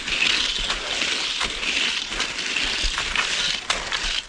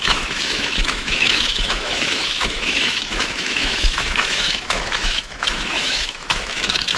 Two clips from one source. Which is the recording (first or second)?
first